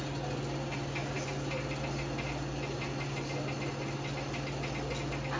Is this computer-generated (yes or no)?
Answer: no